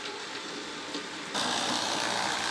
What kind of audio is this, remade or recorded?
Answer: recorded